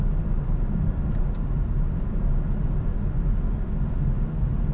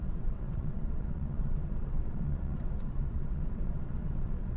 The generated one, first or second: second